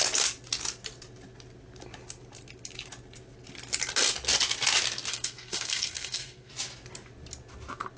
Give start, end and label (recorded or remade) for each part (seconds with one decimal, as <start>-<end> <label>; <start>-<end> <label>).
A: 0.0-5.1 recorded; 5.1-6.5 remade; 6.5-8.0 recorded

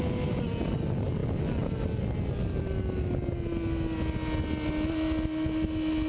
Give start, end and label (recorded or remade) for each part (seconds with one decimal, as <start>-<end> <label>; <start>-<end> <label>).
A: 0.0-6.1 recorded

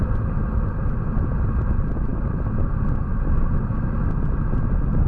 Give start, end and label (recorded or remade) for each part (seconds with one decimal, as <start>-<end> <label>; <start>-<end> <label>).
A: 0.0-5.1 recorded

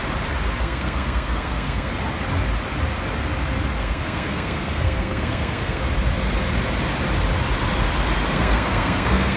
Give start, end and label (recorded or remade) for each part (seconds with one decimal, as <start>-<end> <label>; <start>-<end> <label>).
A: 0.0-0.6 recorded; 0.6-1.9 remade; 1.9-3.8 recorded; 3.8-5.8 remade; 5.8-8.3 recorded; 8.3-9.4 remade

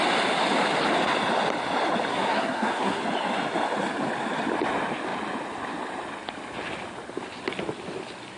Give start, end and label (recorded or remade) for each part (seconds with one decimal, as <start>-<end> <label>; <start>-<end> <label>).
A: 0.0-2.1 recorded; 2.1-3.0 remade; 3.0-8.4 recorded